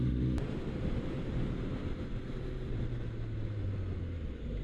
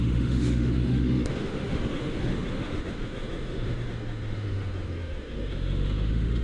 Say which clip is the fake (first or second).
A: second